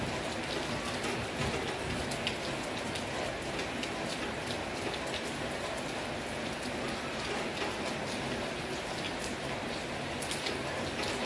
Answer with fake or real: real